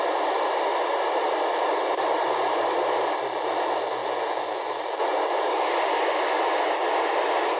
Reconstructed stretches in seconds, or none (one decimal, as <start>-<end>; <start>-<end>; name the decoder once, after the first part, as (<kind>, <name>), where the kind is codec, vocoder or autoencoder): none